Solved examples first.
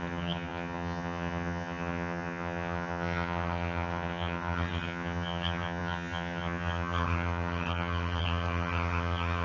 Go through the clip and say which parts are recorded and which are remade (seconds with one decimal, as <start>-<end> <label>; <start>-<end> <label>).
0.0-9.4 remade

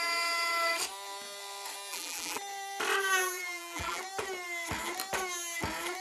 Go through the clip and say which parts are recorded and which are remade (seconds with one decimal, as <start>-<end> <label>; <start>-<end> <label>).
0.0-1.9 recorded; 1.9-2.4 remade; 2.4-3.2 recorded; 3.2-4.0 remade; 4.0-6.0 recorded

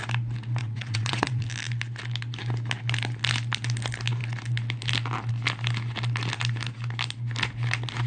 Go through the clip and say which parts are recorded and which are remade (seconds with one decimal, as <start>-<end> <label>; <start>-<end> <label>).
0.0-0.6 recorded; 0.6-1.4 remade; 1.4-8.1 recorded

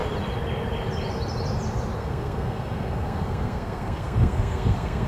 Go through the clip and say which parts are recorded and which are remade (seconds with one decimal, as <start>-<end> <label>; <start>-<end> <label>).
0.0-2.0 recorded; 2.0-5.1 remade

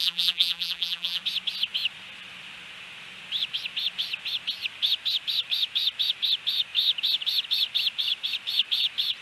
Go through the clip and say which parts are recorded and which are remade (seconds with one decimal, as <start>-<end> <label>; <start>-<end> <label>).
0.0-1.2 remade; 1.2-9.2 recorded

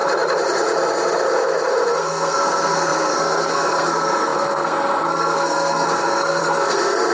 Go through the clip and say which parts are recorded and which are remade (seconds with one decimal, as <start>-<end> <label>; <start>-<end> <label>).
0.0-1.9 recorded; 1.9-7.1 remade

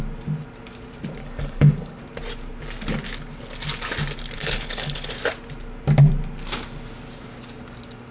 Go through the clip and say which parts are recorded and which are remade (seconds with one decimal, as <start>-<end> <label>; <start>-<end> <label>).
0.0-1.2 recorded; 1.2-2.0 remade; 2.0-4.4 recorded; 4.4-5.1 remade; 5.1-8.1 recorded